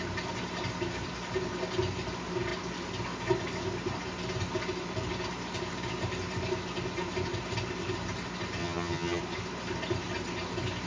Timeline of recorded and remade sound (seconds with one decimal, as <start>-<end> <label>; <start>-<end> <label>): 0.0-8.6 recorded; 8.6-9.2 remade; 9.2-10.9 recorded